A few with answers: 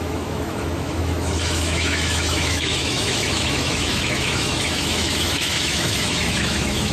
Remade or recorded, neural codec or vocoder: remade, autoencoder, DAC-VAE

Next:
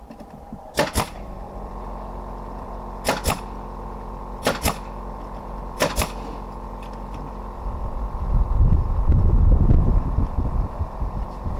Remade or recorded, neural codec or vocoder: remade, vocoder, BigVGAN v2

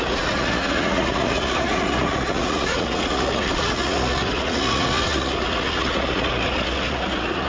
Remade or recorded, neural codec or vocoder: remade, vocoder, Vocos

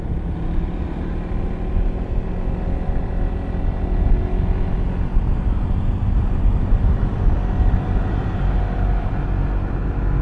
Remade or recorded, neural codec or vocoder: recorded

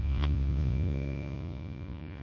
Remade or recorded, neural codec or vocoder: remade, vocoder, Vocos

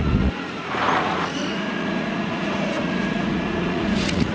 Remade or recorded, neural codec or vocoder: remade, vocoder, Vocos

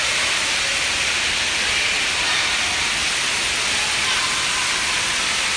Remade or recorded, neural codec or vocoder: recorded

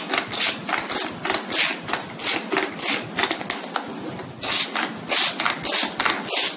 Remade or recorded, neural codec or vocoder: recorded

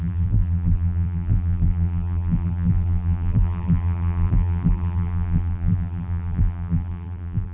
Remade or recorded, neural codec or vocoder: remade, vocoder, BigVGAN v2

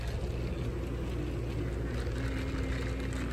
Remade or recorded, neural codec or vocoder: recorded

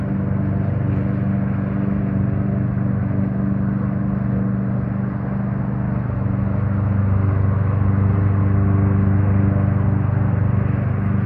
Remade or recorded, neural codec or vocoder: recorded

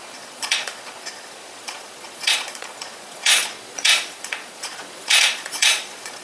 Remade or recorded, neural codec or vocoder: remade, vocoder, Vocos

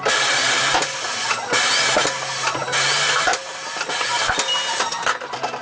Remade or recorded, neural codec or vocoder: recorded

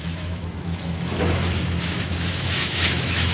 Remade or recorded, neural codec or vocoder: remade, autoencoder, DAC-VAE